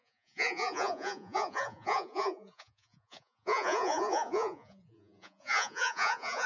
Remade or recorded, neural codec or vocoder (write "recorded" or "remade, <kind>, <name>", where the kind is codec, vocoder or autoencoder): remade, vocoder, Vocos